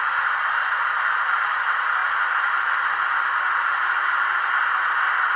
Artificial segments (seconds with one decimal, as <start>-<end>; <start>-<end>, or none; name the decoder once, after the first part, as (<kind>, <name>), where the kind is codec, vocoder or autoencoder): 0.0-2.0 (vocoder, BigVGAN v2)